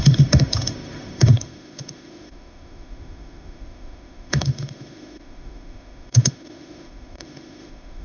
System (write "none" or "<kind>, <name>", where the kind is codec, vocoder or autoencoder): autoencoder, DAC-VAE